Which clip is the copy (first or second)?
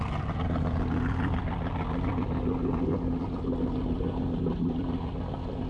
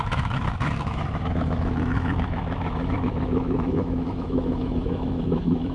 second